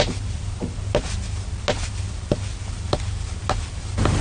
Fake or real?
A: real